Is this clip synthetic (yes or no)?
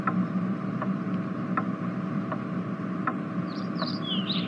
yes